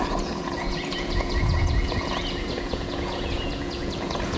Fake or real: fake